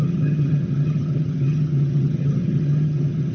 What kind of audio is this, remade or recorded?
remade